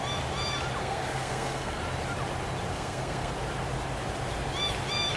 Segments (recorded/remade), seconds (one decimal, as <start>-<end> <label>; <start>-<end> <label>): 0.0-0.8 recorded; 0.8-1.8 remade; 1.8-2.7 recorded; 2.7-3.3 remade; 3.3-5.2 recorded